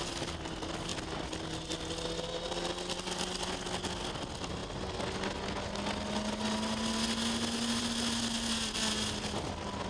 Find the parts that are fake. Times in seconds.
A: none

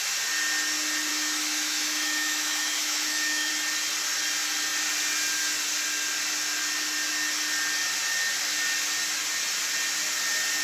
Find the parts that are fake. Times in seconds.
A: 1.1-3.5 (autoencoder, DAC-VAE)

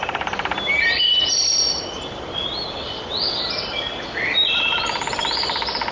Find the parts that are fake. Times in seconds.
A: none

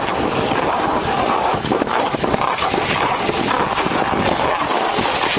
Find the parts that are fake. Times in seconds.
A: 1.5-2.3 (autoencoder, DAC-VAE)

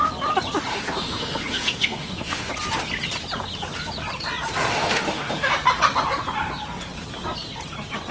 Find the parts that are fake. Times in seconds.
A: 0.7-2.5 (autoencoder, DAC-VAE); 4.7-5.5

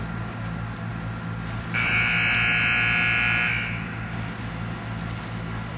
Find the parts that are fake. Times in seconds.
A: none

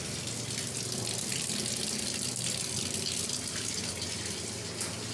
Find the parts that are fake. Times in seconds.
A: none

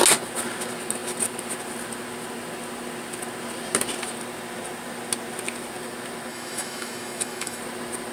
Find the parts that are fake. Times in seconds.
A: 6.3-7.6 (autoencoder, DAC-VAE)